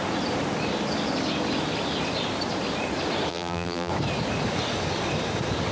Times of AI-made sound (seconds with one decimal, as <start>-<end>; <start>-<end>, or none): 3.3-3.9